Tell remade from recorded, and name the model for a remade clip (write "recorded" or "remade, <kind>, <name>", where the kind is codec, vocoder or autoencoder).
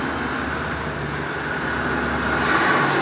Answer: recorded